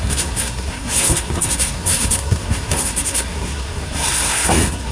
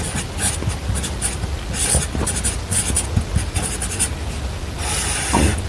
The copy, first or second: first